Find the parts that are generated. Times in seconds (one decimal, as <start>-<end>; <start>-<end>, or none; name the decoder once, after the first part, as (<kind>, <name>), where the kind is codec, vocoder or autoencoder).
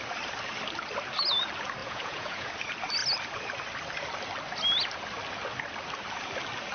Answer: 1.8-2.5 (vocoder, Vocos)